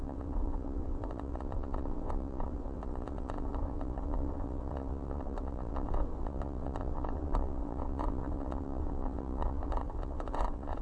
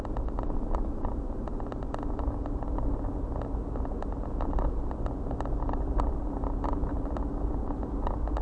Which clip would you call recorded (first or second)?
second